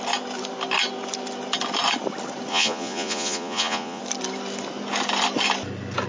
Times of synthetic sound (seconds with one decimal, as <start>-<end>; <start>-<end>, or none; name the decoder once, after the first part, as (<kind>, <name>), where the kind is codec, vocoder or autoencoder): 2.5-4.0 (vocoder, Vocos)